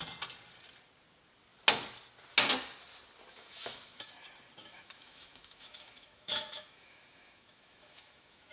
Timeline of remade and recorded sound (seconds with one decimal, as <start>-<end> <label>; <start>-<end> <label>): 0.0-3.3 recorded; 3.3-4.1 remade; 4.1-4.6 recorded; 4.6-8.5 remade